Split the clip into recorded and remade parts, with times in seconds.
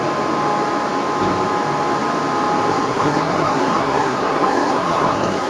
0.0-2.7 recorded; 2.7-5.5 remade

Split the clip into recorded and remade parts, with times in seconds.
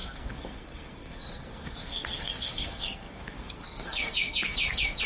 0.0-4.5 remade; 4.5-5.1 recorded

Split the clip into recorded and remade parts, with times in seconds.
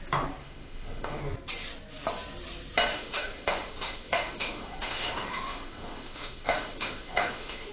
0.0-0.4 recorded; 0.4-1.2 remade; 1.2-2.9 recorded; 2.9-7.7 remade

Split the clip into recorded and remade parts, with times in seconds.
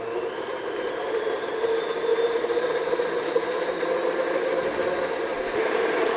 0.0-0.5 recorded; 0.5-1.0 remade; 1.0-2.1 recorded; 2.1-3.9 remade; 3.9-5.3 recorded; 5.3-6.2 remade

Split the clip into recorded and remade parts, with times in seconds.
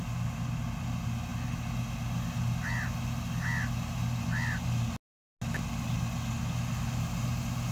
0.0-7.7 recorded